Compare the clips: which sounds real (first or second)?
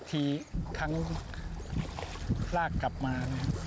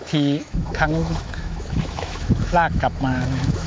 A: first